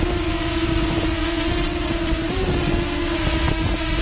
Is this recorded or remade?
recorded